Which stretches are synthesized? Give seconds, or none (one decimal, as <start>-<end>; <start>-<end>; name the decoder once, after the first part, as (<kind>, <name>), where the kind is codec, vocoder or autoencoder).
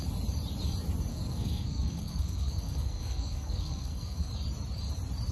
1.1-4.3 (codec, SNAC)